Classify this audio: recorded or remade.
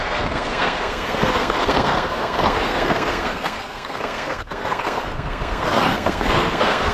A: remade